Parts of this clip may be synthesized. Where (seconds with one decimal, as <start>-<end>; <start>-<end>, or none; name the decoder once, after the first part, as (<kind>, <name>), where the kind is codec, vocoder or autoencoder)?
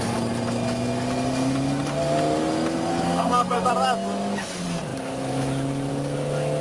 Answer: 2.9-3.7 (codec, SNAC)